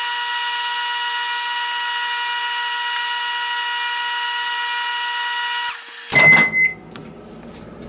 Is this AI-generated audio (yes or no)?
no